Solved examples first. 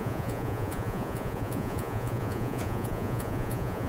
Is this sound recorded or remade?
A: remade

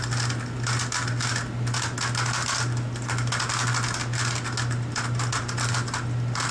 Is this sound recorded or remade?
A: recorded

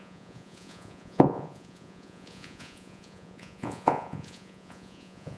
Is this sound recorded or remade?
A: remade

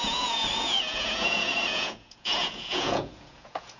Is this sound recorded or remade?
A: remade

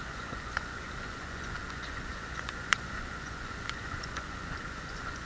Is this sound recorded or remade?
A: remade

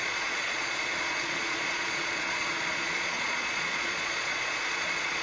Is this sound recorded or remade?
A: remade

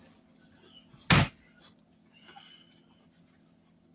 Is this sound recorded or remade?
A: recorded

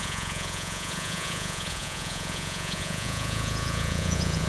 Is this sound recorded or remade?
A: remade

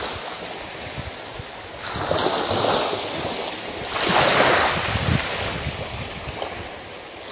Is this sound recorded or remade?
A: recorded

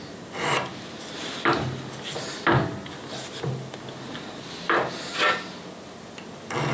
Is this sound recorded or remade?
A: recorded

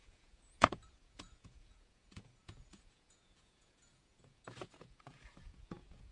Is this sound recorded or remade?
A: remade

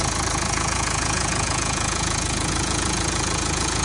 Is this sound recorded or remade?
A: remade